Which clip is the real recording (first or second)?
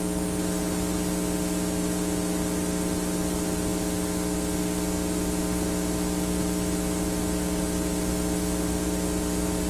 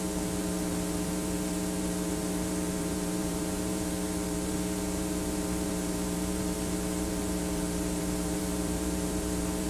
first